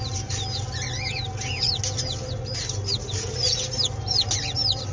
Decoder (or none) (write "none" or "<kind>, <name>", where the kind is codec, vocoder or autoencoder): none